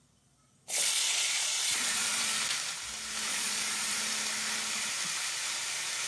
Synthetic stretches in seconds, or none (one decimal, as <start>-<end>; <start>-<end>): 1.0-2.3; 3.3-4.0

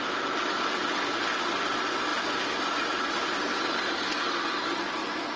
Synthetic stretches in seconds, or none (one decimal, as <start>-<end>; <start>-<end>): none

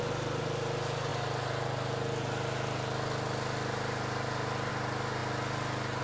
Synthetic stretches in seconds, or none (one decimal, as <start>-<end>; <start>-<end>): none

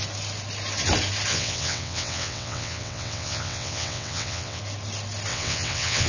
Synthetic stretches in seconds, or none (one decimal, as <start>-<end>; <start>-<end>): 1.3-4.6; 5.3-6.1

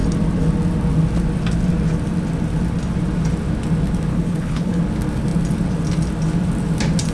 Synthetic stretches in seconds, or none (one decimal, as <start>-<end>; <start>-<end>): 4.1-4.8

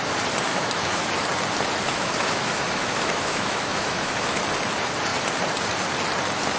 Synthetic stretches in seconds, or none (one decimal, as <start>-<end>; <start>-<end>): 0.5-1.1; 1.9-4.4